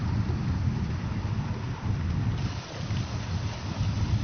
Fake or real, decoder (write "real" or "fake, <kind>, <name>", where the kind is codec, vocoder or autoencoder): real